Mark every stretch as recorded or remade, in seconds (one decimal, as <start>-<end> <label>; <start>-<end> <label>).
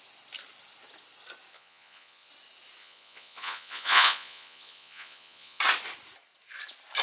0.0-1.5 recorded; 1.5-2.3 remade; 2.3-2.8 recorded; 2.8-5.6 remade; 5.6-7.0 recorded